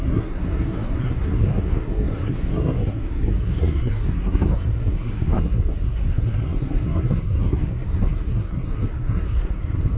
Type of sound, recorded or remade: remade